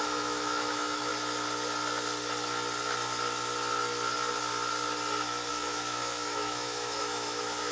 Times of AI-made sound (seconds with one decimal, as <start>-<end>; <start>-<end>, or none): 0.0-1.1; 5.5-7.7